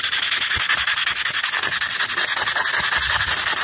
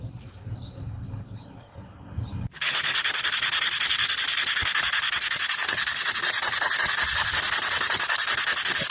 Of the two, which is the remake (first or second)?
second